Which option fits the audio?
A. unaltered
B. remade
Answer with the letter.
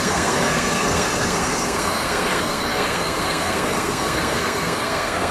B